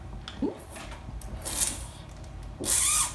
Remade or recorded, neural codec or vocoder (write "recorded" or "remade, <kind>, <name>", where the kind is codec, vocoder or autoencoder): recorded